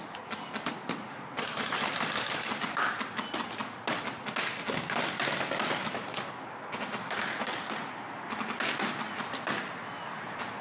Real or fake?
real